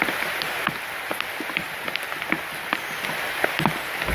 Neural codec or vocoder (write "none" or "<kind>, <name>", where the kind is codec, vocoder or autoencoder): none